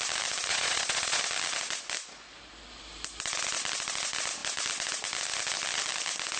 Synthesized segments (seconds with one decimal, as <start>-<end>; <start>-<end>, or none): 0.5-1.2